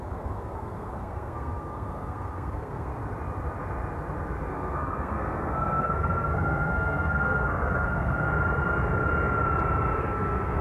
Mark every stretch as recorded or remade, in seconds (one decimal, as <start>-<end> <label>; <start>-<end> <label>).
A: 0.0-2.9 remade; 2.9-4.5 recorded; 4.5-8.3 remade; 8.3-10.0 recorded; 10.0-10.6 remade